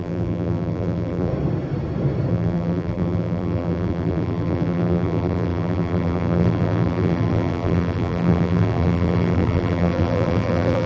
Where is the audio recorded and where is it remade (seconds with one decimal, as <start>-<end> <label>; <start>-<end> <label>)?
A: 0.0-1.3 remade; 1.3-2.3 recorded; 2.3-10.9 remade